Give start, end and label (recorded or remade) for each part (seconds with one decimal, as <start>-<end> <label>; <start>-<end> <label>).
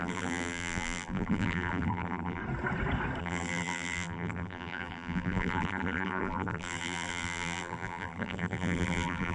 0.0-2.4 remade; 2.4-3.2 recorded; 3.2-9.3 remade